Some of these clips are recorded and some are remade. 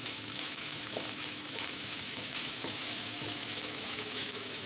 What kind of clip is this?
remade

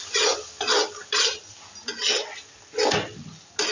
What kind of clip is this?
recorded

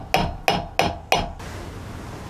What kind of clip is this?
recorded